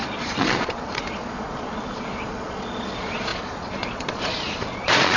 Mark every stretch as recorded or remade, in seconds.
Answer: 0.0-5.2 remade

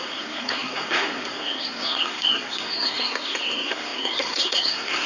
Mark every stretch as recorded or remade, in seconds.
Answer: 0.0-5.1 remade

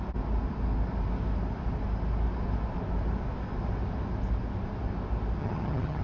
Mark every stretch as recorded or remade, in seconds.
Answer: 0.0-5.4 recorded; 5.4-6.0 remade

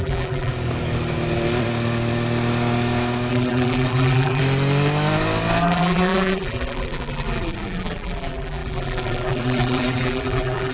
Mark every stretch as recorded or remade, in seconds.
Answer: 0.0-0.5 remade; 0.5-3.3 recorded; 3.3-4.4 remade; 4.4-5.6 recorded; 5.6-10.7 remade

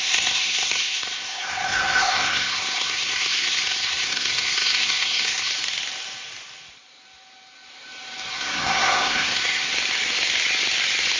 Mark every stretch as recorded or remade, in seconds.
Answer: 0.0-5.5 remade; 5.5-8.3 recorded; 8.3-9.7 remade; 9.7-11.2 recorded